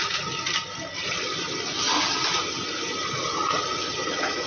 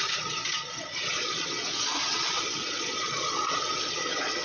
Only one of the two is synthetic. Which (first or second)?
second